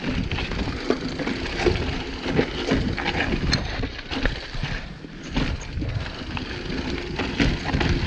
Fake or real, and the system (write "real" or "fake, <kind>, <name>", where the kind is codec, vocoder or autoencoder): real